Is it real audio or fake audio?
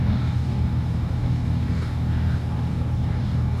fake